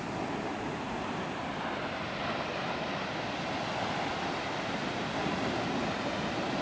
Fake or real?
real